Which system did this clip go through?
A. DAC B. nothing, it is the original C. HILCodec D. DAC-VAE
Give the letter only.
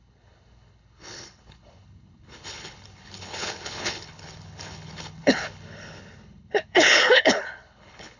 C